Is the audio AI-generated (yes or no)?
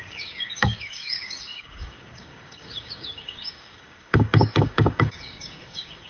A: yes